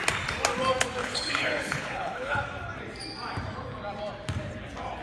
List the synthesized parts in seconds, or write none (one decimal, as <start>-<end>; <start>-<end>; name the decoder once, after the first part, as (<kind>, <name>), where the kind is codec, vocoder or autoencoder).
1.0-2.4 (codec, HILCodec)